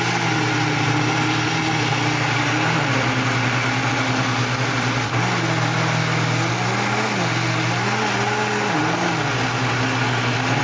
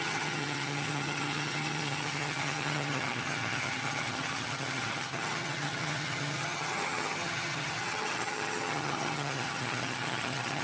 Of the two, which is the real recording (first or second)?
first